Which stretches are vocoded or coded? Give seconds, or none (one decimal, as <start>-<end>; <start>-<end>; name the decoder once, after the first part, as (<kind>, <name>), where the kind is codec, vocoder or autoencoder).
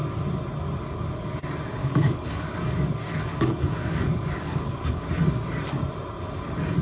1.8-5.1 (codec, DAC)